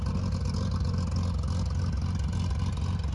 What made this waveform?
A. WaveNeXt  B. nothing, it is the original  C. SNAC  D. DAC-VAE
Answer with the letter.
B